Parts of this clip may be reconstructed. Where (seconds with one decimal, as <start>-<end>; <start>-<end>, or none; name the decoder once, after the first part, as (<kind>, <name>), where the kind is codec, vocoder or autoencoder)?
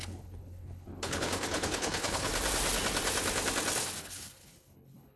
0.0-2.3 (codec, HILCodec); 4.0-5.2